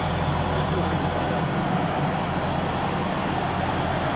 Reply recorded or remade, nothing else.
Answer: remade